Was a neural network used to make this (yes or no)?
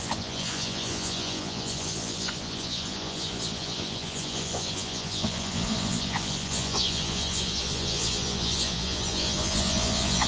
yes